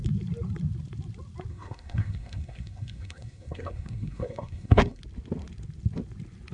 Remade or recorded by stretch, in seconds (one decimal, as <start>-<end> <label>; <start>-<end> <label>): 0.0-1.5 recorded; 1.5-5.0 remade; 5.0-6.5 recorded